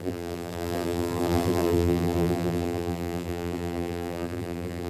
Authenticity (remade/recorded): remade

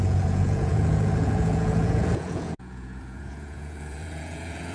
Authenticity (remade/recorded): remade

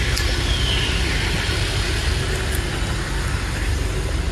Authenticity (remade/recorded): recorded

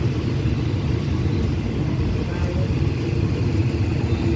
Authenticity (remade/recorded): recorded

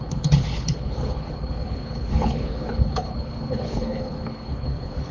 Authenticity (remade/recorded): remade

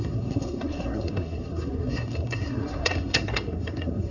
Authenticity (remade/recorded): remade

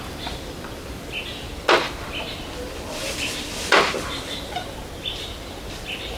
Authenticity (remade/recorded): recorded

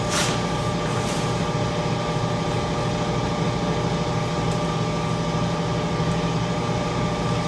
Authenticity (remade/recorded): recorded